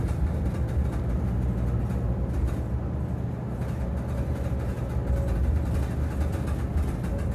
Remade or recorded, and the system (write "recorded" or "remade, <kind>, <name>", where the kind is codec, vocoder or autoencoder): recorded